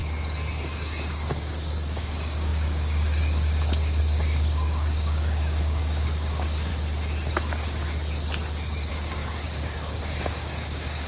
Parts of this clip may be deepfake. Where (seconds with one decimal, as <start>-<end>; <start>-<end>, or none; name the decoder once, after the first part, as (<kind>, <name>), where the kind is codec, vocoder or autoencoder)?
0.6-6.7 (codec, DAC); 8.9-11.1